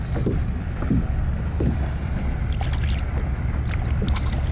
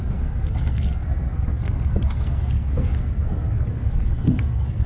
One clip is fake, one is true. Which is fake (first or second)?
second